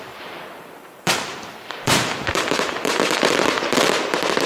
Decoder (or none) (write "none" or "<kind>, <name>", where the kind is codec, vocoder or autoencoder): vocoder, BigVGAN v2